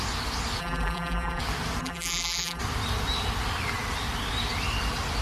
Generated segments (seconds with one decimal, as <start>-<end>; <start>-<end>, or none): 0.6-1.4; 1.8-2.6